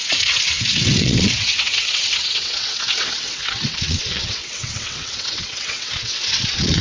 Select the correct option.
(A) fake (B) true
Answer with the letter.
A